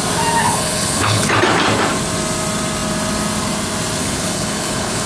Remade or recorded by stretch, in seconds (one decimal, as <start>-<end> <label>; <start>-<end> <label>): 0.0-0.4 recorded; 0.4-1.3 remade; 1.3-4.0 recorded; 4.0-5.1 remade